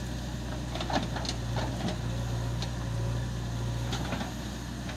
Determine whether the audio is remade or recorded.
recorded